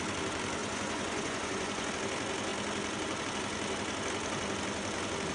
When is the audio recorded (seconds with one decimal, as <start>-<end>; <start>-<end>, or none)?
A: 0.0-0.6; 1.9-5.3